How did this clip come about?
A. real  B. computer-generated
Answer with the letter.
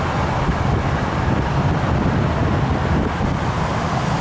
A